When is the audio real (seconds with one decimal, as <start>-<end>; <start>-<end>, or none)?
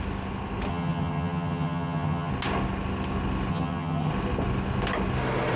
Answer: 0.0-0.7; 2.3-3.5; 4.1-5.6